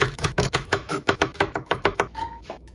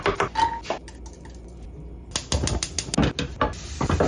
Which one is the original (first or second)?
second